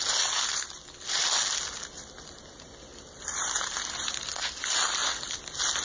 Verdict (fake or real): real